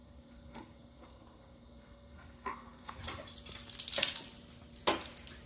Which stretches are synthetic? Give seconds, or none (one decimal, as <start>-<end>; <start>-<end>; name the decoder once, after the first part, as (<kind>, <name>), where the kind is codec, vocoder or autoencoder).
0.0-3.0 (codec, SNAC)